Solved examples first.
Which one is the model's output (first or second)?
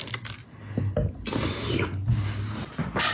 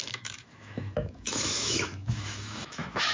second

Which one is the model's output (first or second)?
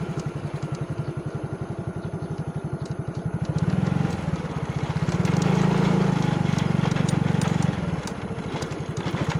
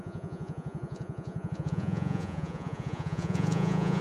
second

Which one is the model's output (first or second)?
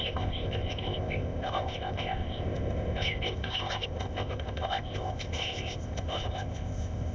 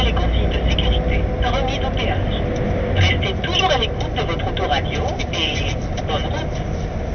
first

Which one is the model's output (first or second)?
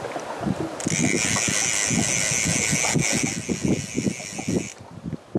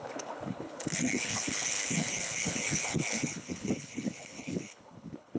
second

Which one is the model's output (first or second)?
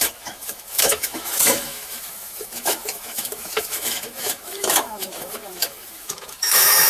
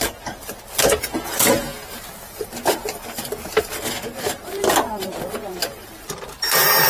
first